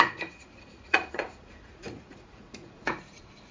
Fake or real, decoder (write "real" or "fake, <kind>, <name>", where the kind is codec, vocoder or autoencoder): fake, vocoder, Vocos